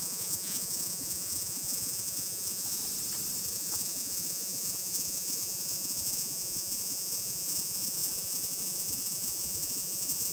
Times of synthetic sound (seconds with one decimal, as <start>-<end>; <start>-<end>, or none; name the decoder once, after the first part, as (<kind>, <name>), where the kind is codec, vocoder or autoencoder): 0.0-2.8 (vocoder, Vocos); 3.4-10.3